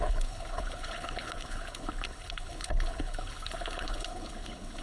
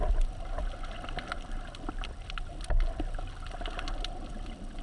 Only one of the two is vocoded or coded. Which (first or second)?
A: first